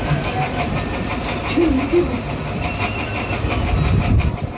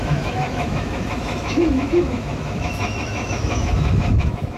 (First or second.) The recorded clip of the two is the first